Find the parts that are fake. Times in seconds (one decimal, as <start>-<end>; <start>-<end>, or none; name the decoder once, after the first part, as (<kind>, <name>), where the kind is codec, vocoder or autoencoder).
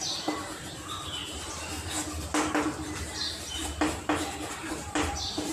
0.0-1.2 (vocoder, BigVGAN v2); 4.5-5.5